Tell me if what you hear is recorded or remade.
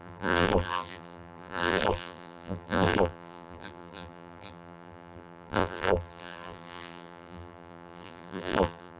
remade